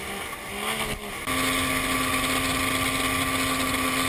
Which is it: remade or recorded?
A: recorded